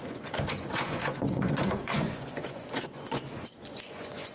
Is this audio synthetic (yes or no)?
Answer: yes